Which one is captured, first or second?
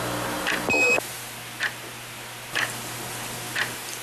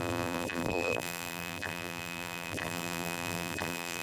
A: first